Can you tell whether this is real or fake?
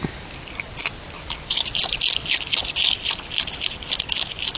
real